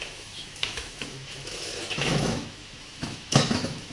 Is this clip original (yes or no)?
no